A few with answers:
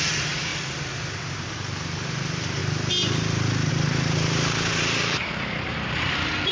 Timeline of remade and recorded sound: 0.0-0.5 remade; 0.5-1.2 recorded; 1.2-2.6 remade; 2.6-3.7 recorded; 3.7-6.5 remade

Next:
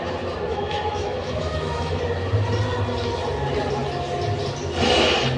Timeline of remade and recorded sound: 0.0-0.5 recorded; 0.5-2.0 remade; 2.0-5.4 recorded

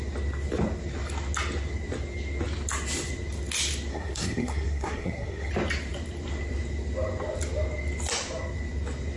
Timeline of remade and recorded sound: 0.0-3.9 recorded; 3.9-5.5 remade; 5.5-9.2 recorded

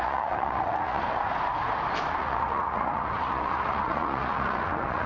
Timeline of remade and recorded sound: 0.0-1.2 remade; 1.2-2.2 recorded; 2.2-5.1 remade

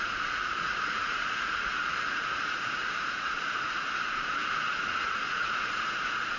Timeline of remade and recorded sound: 0.0-6.4 remade

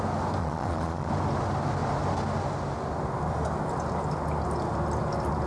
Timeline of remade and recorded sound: 0.0-0.4 recorded; 0.4-1.1 remade; 1.1-5.5 recorded